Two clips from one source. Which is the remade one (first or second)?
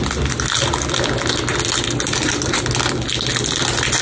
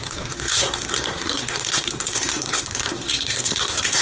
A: second